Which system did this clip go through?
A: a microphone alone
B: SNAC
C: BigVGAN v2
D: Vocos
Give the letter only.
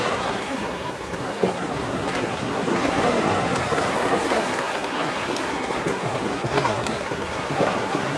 B